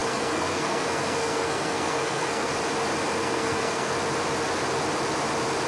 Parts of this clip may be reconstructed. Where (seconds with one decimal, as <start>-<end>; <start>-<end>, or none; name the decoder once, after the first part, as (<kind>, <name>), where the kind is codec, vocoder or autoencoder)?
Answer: 0.0-2.5 (codec, SNAC); 3.2-3.9